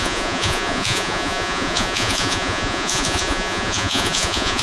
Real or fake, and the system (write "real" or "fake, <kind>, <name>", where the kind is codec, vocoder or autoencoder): fake, vocoder, Vocos